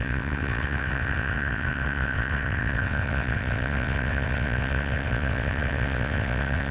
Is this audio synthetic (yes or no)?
yes